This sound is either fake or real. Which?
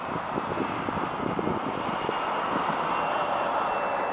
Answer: real